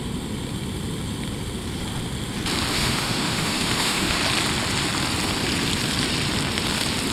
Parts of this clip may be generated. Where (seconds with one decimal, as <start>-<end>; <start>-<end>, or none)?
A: 2.7-4.2